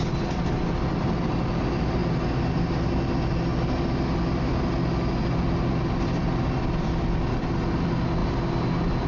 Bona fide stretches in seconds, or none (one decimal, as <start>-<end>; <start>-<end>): 0.0-9.1